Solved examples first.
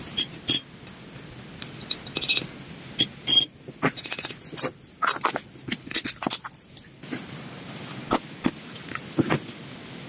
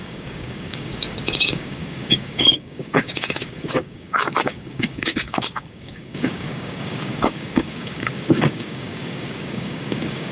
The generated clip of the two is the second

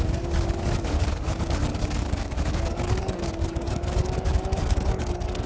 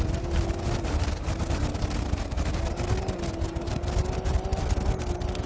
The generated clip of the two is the first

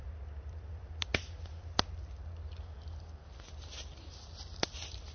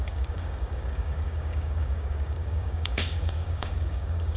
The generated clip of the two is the second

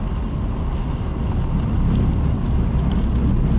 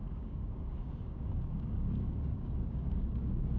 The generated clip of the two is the second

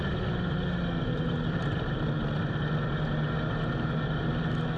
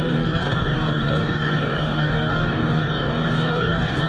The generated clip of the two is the second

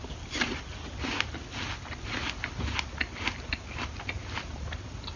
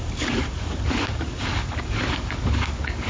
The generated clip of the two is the second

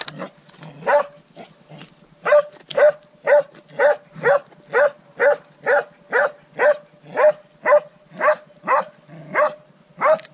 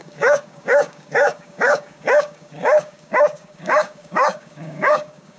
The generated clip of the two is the second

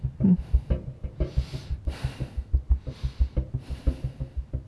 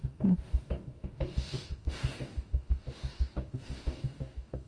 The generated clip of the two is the second